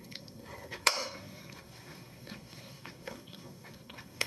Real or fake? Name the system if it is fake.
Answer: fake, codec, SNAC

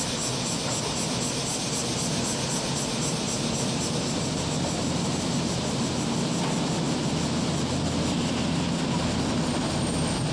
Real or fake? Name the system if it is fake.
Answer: real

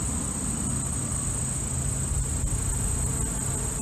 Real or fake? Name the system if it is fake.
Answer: real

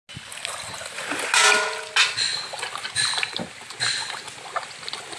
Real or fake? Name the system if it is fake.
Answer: real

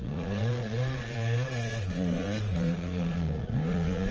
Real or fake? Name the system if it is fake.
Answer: fake, vocoder, Vocos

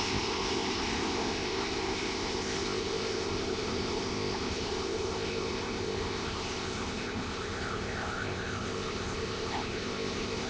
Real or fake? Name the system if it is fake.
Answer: fake, codec, ZipCodec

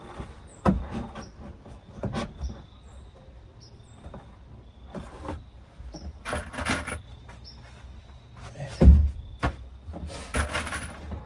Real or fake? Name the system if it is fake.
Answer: real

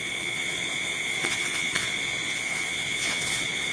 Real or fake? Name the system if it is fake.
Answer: fake, vocoder, Vocos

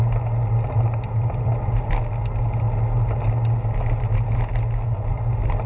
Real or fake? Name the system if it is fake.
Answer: real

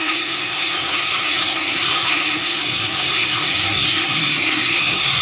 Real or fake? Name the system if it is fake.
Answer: fake, codec, SNAC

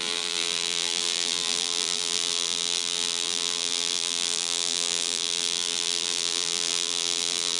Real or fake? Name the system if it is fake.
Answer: fake, vocoder, BigVGAN v2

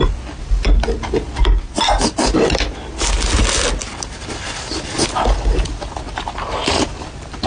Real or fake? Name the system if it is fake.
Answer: real